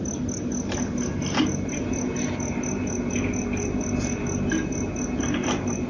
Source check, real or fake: real